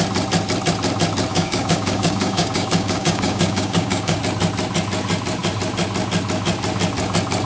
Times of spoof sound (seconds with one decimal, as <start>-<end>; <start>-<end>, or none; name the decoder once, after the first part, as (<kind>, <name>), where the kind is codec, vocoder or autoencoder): 1.3-4.2 (codec, DAC)